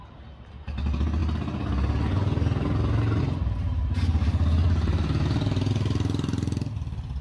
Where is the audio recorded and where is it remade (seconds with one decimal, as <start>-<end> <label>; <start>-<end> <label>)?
0.0-3.8 recorded; 3.8-5.7 remade; 5.7-7.2 recorded